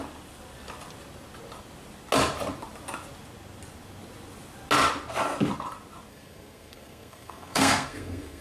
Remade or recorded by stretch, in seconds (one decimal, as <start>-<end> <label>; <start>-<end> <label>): 0.0-6.1 recorded; 6.1-8.4 remade